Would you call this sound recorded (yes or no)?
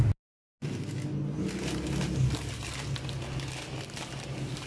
yes